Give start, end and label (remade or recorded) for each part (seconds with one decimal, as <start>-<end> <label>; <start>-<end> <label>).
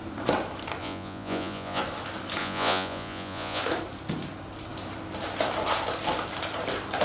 0.0-0.8 recorded; 0.8-1.8 remade; 1.8-2.4 recorded; 2.4-3.6 remade; 3.6-7.0 recorded